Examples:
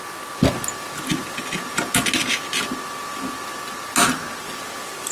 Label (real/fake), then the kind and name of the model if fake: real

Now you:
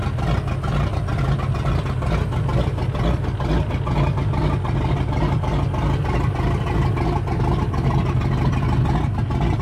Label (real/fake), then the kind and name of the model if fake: real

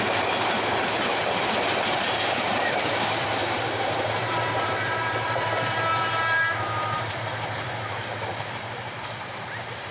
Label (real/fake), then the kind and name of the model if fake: fake, vocoder, BigVGAN v2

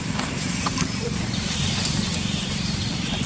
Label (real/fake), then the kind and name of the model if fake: fake, vocoder, BigVGAN v2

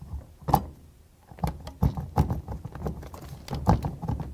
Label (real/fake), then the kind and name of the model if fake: real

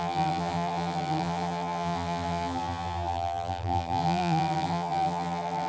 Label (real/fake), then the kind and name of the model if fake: fake, vocoder, BigVGAN v2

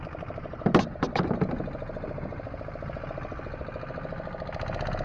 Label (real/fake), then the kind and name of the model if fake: real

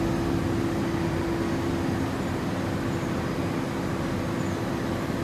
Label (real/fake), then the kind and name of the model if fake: real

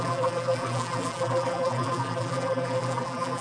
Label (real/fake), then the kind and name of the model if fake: fake, vocoder, BigVGAN v2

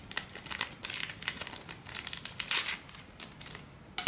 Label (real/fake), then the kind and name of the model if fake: real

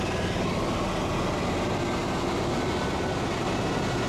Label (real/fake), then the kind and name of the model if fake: real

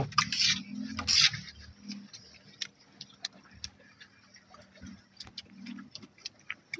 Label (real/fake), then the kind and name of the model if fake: real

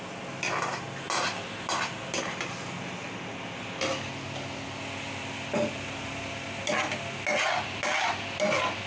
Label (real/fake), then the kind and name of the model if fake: real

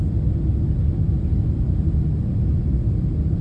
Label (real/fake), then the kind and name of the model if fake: real